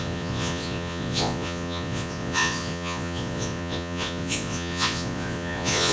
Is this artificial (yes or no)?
yes